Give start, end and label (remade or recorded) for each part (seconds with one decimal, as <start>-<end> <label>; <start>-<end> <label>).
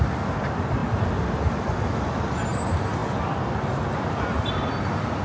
0.0-5.2 recorded